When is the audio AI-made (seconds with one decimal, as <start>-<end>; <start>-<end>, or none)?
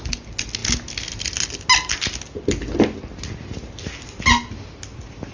none